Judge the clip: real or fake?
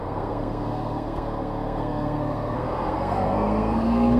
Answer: fake